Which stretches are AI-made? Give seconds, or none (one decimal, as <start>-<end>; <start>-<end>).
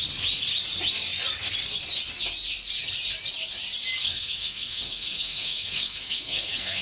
4.0-6.8